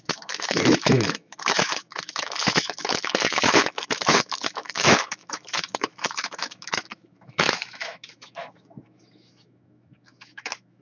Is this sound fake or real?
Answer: fake